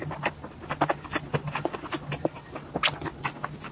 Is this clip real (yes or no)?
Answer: yes